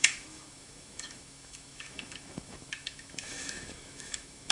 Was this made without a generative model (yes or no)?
no